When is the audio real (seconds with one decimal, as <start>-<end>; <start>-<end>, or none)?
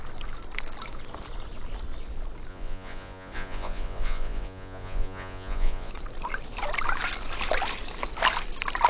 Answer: 0.0-2.5; 5.9-8.9